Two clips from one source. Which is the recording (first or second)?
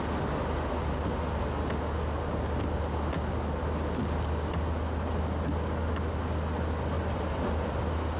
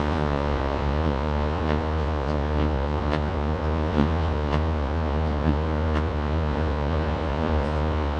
first